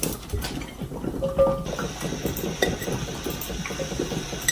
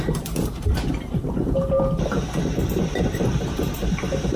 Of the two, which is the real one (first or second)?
first